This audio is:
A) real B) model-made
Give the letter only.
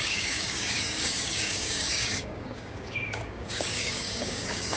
B